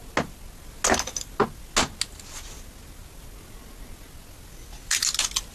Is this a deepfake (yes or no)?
no